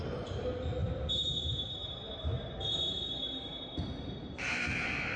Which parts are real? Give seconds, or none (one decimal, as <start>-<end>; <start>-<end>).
0.0-5.2